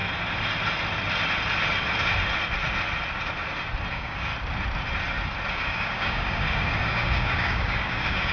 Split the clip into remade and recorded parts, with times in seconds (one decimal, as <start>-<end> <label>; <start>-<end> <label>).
0.0-3.9 recorded; 3.9-4.3 remade; 4.3-5.5 recorded; 5.5-8.3 remade